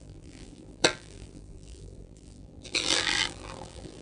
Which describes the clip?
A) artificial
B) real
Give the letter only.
A